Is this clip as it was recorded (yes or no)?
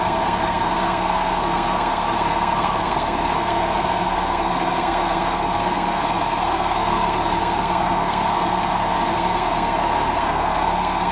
no